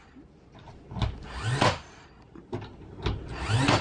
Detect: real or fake real